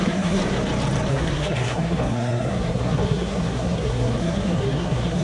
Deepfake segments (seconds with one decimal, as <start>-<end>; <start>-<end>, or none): 0.0-0.4; 1.1-5.2